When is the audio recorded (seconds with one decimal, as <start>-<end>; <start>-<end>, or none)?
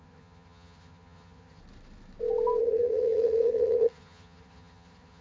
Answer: 1.6-2.6